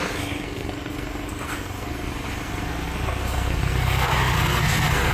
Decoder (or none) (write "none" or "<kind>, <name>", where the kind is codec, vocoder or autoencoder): codec, SNAC